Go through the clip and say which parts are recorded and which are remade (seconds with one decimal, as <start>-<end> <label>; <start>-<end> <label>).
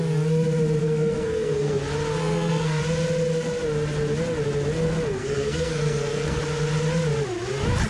0.0-0.8 recorded; 0.8-1.8 remade; 1.8-2.2 recorded; 2.2-2.8 remade; 2.8-5.1 recorded; 5.1-6.4 remade; 6.4-7.9 recorded